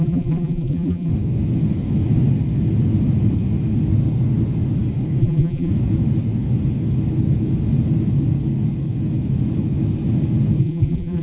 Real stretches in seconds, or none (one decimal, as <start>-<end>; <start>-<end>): 1.1-5.2; 5.7-10.6